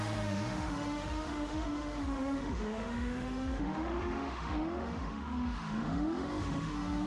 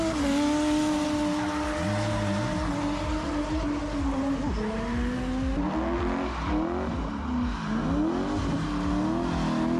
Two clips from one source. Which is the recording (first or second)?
second